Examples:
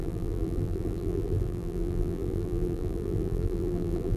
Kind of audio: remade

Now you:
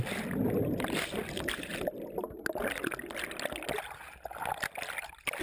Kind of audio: recorded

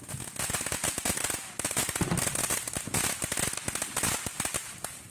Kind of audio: recorded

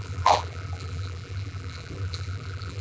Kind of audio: remade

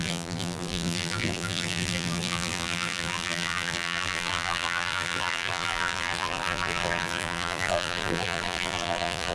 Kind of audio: remade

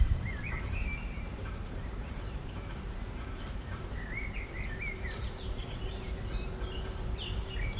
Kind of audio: remade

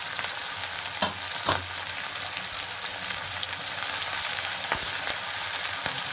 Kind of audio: recorded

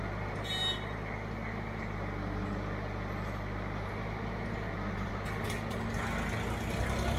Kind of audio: recorded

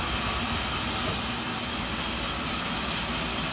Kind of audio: recorded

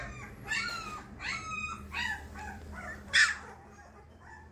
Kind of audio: remade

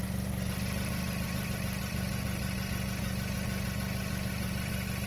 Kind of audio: recorded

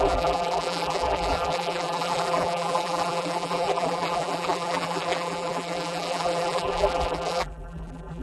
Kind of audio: remade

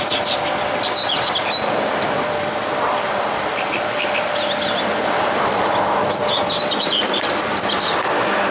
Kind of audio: remade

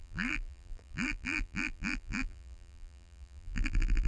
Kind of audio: remade